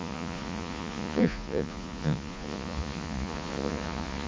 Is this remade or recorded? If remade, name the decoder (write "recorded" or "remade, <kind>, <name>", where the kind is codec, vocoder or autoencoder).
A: remade, vocoder, Vocos